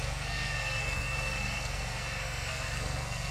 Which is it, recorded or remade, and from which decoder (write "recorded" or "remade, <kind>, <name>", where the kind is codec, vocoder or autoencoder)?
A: remade, codec, SNAC